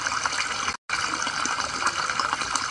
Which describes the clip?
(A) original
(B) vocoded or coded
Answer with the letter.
A